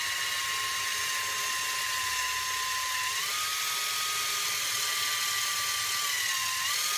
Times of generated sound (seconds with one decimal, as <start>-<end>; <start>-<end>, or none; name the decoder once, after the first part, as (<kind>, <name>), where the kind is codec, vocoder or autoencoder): none